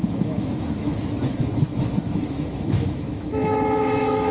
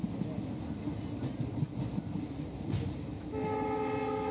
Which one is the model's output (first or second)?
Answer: first